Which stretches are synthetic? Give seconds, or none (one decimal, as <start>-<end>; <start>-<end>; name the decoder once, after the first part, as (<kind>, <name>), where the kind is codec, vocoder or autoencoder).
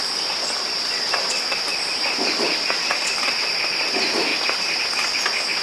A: 1.7-3.2 (vocoder, BigVGAN v2)